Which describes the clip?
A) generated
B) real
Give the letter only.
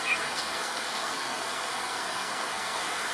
A